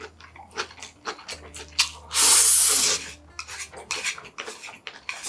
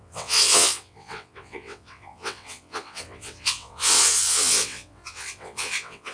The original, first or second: first